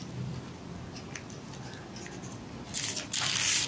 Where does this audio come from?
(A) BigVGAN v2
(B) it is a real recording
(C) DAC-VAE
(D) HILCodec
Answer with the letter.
B